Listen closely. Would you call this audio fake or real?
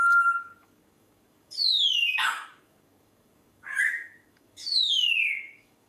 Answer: fake